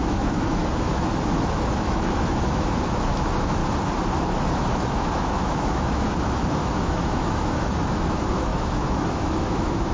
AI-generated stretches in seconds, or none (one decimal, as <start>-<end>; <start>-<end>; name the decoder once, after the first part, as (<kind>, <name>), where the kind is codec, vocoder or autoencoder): 0.0-3.6 (autoencoder, DAC-VAE); 4.4-9.9